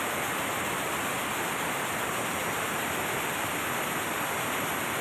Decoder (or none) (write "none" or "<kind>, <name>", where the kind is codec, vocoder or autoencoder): vocoder, BigVGAN v2